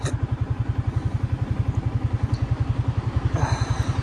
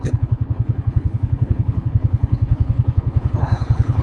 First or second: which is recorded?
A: first